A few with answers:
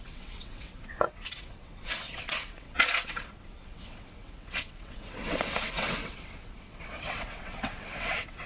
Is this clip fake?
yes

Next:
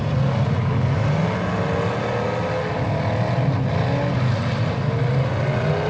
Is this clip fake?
no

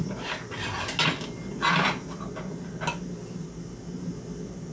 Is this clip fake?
no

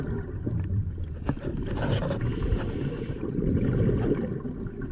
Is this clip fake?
no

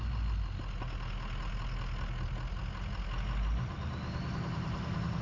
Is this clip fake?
no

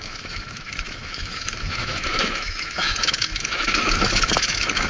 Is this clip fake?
yes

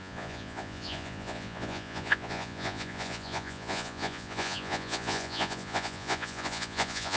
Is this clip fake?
yes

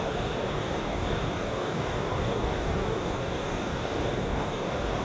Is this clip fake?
yes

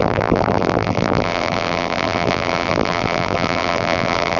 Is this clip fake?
yes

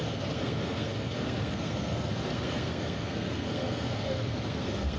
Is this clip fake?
yes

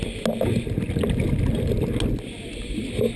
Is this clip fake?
no